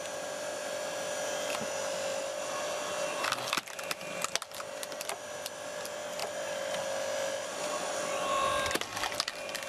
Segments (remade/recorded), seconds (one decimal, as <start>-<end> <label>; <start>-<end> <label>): 0.0-9.7 recorded